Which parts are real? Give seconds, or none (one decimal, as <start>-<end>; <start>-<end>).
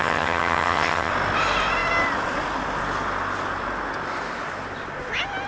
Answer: 1.1-5.5